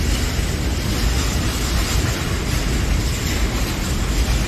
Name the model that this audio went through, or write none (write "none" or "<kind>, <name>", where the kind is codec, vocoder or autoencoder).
none